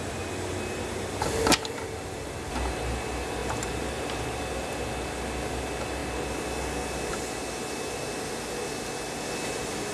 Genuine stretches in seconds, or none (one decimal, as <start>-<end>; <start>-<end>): 0.0-3.4; 4.4-9.9